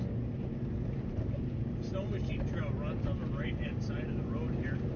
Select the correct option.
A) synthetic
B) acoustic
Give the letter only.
B